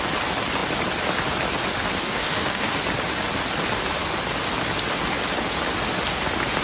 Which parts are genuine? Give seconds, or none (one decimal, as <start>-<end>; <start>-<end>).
0.0-2.0; 2.7-6.6